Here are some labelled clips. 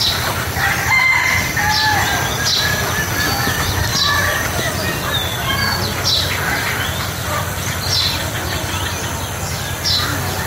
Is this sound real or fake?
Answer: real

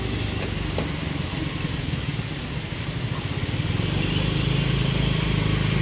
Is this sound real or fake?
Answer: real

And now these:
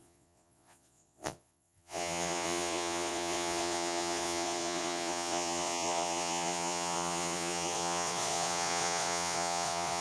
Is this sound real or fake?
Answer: fake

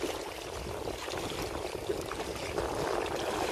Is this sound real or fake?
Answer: real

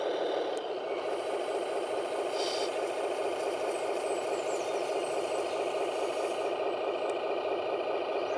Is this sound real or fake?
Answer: real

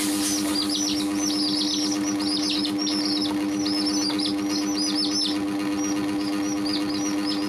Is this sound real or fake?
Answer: real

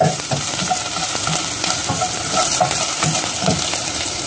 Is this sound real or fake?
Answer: real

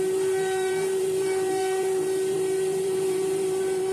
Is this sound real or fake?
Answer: fake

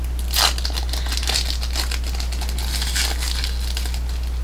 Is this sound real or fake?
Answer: real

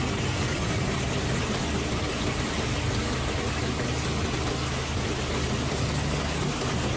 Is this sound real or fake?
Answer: real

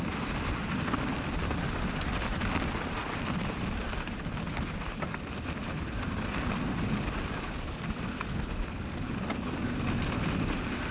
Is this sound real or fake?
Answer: real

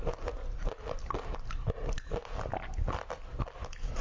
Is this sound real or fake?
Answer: real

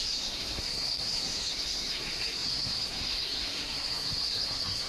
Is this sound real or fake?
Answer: fake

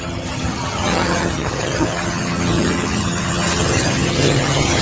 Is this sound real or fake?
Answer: fake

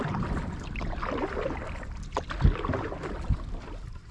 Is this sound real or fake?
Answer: real